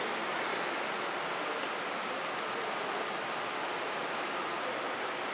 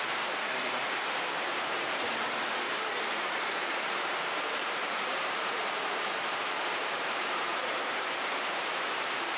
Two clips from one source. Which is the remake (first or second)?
second